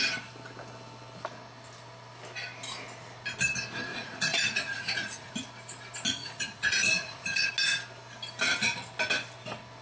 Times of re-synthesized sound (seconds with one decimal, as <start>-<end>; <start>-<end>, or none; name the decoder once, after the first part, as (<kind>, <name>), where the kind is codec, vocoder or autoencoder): 3.9-5.3 (vocoder, Vocos); 6.2-7.5